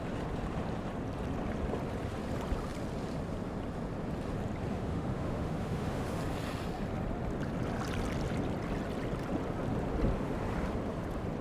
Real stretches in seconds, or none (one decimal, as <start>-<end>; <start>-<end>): 0.0-4.7; 6.2-11.4